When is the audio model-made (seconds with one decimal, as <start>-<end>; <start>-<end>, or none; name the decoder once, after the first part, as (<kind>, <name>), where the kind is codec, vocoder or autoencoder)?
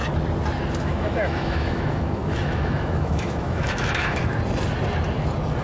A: 0.8-4.2 (autoencoder, DAC-VAE)